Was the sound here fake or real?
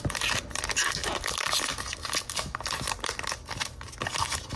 real